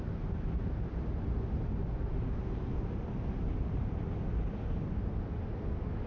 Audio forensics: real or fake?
real